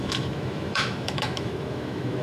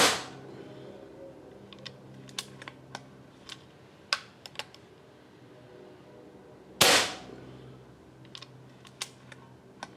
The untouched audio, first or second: second